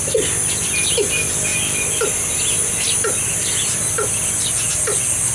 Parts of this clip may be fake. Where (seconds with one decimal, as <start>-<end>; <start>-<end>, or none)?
none